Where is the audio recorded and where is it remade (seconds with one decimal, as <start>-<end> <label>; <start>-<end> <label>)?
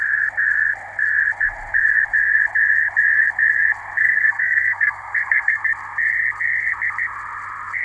0.0-4.0 recorded; 4.0-5.6 remade; 5.6-7.8 recorded